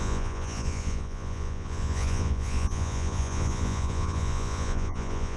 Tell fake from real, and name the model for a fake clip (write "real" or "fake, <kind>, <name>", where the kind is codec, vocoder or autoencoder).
fake, vocoder, Vocos